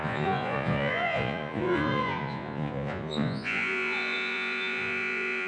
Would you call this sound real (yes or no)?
no